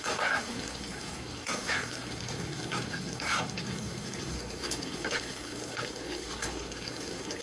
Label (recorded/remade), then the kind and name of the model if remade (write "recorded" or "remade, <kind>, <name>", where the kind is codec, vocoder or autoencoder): remade, codec, SNAC